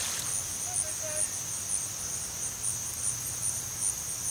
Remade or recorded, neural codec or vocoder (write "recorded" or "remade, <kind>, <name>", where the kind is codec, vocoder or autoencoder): recorded